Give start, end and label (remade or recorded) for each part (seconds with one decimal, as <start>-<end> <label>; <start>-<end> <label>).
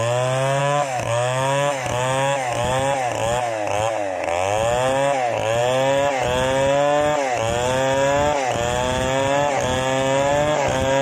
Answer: 0.0-0.6 recorded; 0.6-2.7 remade; 2.7-11.0 recorded